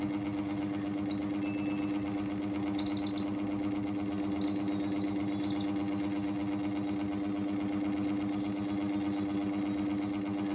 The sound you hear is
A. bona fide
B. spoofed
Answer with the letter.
A